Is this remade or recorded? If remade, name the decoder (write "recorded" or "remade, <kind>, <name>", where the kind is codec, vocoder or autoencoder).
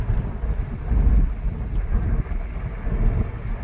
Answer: recorded